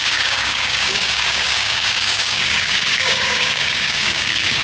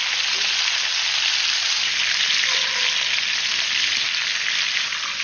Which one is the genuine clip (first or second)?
second